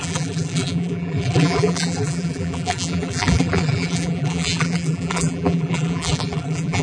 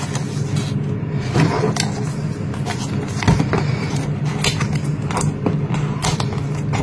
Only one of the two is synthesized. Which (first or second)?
first